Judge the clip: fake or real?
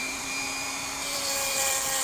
fake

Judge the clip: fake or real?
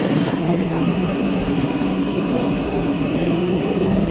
fake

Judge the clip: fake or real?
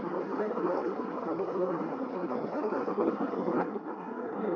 fake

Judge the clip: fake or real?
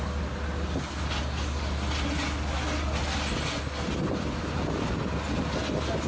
real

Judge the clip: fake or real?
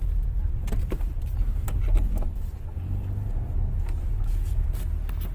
real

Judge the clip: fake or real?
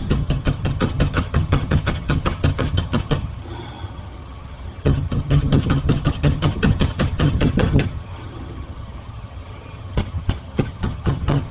fake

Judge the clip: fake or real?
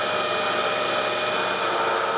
real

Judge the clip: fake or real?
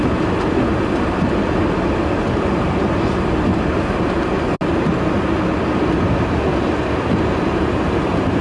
real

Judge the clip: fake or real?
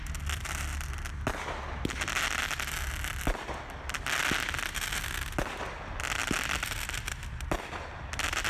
real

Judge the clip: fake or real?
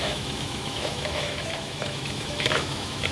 fake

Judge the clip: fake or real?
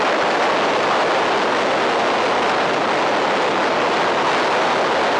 real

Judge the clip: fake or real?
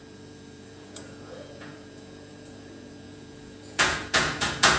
fake